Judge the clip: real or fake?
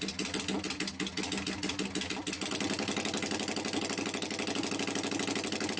real